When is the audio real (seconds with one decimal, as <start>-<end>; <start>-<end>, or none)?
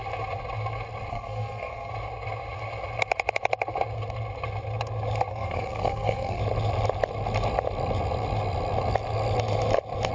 0.0-1.1; 1.9-5.3; 6.4-10.1